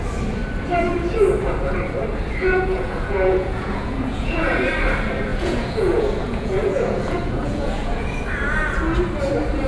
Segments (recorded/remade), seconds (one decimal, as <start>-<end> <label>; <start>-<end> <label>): 0.0-2.4 recorded; 2.4-4.7 remade; 4.7-5.3 recorded; 5.3-8.2 remade; 8.2-9.7 recorded